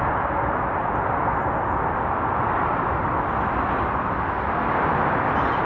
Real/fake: real